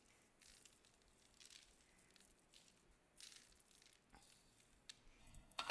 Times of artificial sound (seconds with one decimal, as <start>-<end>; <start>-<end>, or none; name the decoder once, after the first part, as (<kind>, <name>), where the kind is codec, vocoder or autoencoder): 5.2-5.7 (codec, SNAC)